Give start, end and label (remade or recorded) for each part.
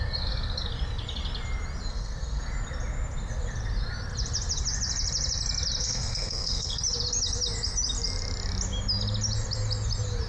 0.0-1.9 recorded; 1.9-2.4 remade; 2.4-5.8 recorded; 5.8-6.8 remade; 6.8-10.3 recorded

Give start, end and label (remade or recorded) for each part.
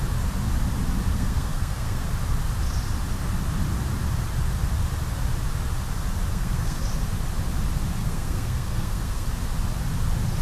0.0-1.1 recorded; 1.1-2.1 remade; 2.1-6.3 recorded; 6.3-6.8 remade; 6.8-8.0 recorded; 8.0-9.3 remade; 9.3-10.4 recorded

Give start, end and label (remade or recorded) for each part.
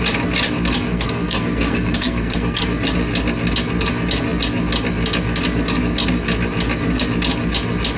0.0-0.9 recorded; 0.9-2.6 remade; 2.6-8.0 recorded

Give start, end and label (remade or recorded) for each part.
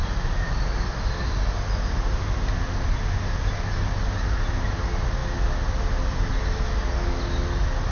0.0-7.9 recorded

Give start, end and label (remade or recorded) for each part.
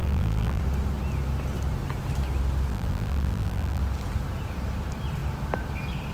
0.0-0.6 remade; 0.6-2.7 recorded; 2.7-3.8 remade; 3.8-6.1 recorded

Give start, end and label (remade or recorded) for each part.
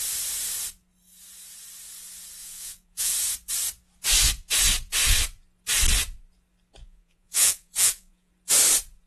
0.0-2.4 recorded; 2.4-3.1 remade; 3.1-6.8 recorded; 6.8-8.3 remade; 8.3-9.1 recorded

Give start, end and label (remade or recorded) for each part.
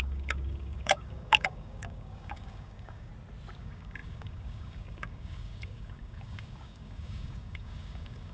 0.0-3.1 remade; 3.1-3.6 recorded; 3.6-8.3 remade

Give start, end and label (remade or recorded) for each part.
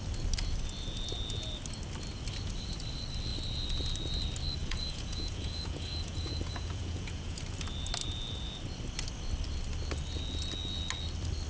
0.0-4.6 recorded; 4.6-7.4 remade; 7.4-11.5 recorded